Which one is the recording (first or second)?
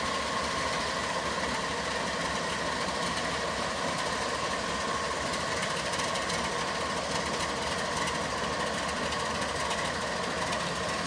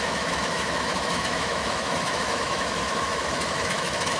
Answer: first